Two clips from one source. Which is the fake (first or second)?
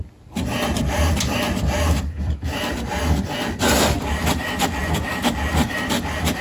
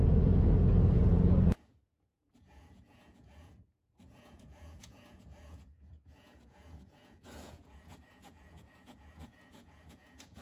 second